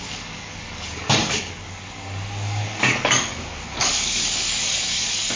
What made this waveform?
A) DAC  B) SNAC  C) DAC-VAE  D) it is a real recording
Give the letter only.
A